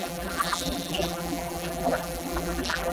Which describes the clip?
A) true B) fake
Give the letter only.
B